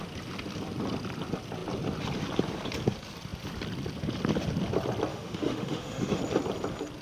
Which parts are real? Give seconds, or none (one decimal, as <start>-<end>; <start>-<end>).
0.0-5.1; 6.2-7.0